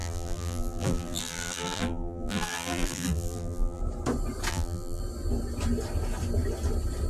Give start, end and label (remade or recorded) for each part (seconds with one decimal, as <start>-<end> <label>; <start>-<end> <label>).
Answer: 0.0-3.8 remade; 3.8-4.5 recorded; 4.5-5.0 remade; 5.0-7.1 recorded